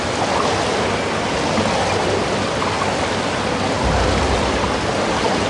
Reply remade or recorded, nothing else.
recorded